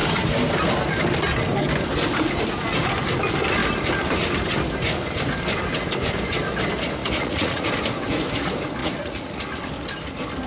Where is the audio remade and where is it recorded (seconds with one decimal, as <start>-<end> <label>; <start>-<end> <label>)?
0.0-7.0 recorded; 7.0-7.7 remade; 7.7-8.8 recorded; 8.8-9.4 remade; 9.4-10.5 recorded